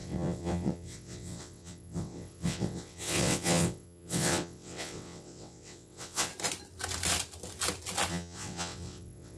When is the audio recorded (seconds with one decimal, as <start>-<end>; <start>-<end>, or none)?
6.3-8.1

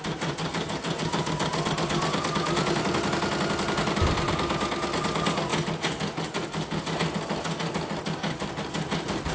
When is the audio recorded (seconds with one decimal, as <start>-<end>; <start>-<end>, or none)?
0.0-9.3